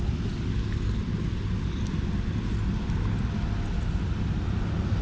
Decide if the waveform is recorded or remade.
recorded